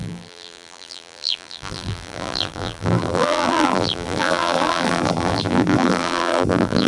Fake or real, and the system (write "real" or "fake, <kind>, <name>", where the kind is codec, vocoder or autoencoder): fake, vocoder, BigVGAN v2